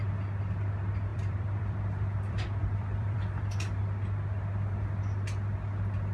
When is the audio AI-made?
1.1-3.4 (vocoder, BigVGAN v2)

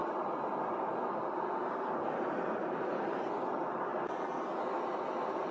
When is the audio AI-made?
0.0-3.3 (vocoder, BigVGAN v2)

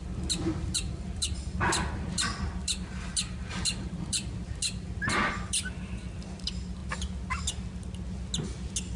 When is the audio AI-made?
0.0-4.6 (vocoder, BigVGAN v2); 5.3-6.8

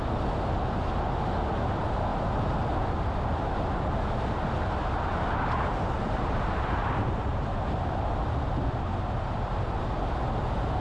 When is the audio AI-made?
5.1-7.5 (vocoder, BigVGAN v2)